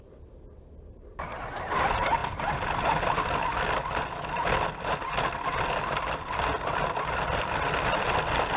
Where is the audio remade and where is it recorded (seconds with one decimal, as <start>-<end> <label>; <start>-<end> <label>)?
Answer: 0.0-8.6 recorded